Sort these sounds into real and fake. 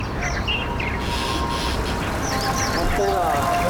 real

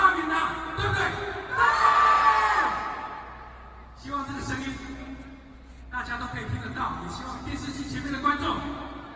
real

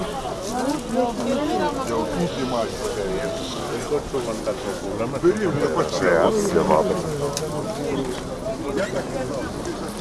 real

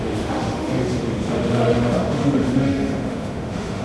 fake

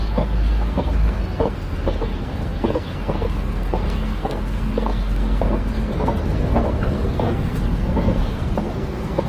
fake